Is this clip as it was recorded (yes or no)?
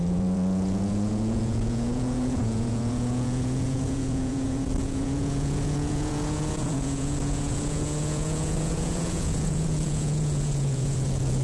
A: no